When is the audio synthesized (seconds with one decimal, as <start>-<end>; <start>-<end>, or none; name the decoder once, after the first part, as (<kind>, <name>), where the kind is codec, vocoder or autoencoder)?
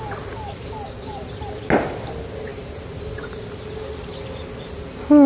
none